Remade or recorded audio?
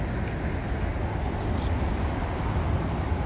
recorded